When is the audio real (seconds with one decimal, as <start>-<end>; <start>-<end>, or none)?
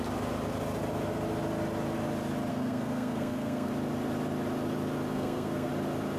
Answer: 0.0-2.5; 3.7-5.1; 5.7-6.2